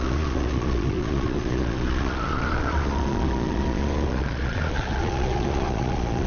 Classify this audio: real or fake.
fake